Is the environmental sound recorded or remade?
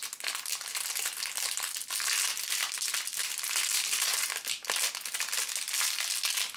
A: recorded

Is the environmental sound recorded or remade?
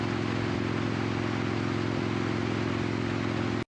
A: recorded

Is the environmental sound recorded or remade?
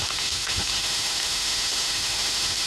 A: remade